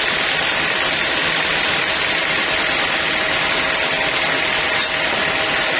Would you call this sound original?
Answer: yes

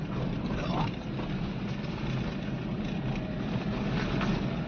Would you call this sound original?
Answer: yes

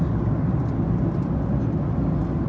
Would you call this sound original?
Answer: yes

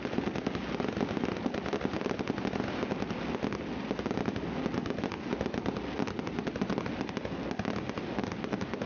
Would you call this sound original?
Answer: yes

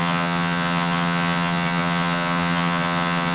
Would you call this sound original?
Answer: no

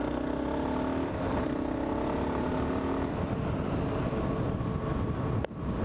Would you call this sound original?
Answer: yes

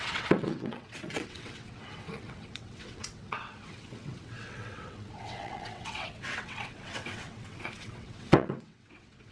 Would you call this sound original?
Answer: no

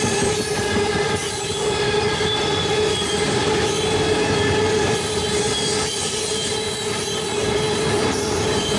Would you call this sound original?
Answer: yes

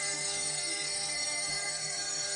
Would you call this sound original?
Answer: no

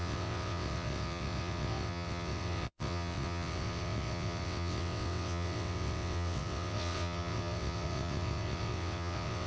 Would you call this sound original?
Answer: no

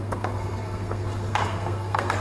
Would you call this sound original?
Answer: no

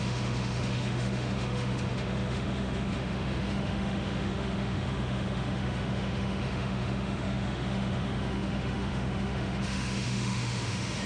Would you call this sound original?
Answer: no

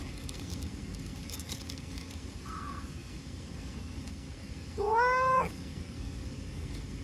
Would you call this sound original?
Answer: no